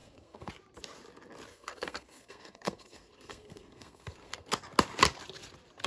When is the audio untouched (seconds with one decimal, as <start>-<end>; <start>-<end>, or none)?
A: 0.5-1.5; 4.5-5.9